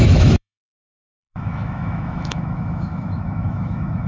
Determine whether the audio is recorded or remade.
remade